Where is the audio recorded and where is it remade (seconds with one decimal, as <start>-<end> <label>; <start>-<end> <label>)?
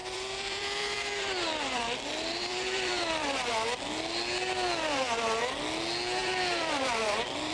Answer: 0.0-3.5 remade; 3.5-6.2 recorded; 6.2-7.5 remade